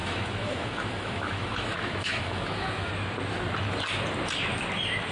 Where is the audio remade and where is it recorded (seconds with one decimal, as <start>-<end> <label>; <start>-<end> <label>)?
0.0-2.9 remade; 2.9-5.1 recorded